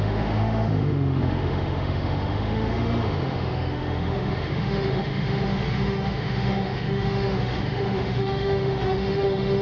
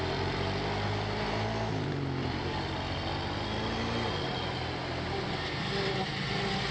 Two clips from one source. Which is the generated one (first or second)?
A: first